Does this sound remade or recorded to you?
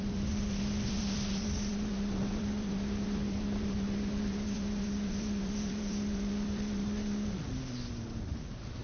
remade